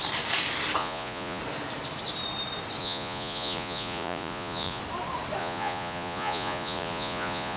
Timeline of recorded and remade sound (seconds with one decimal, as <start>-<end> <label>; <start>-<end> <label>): 0.0-0.8 recorded; 0.8-1.4 remade; 1.4-2.8 recorded; 2.8-4.8 remade; 4.8-5.4 recorded; 5.4-7.6 remade